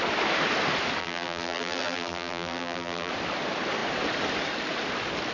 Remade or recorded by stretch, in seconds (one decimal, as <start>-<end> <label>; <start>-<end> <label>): 0.0-1.0 recorded; 1.0-3.1 remade; 3.1-5.3 recorded